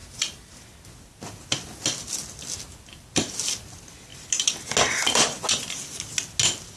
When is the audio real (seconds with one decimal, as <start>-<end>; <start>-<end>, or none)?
0.6-6.8